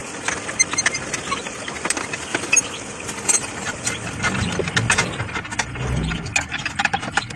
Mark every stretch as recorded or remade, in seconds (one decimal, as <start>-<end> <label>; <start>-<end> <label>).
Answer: 0.0-7.4 recorded